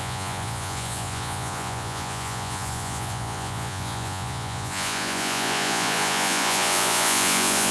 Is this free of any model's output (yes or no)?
no